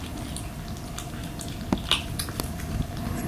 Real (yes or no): yes